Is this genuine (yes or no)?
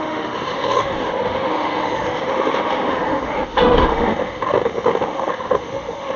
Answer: no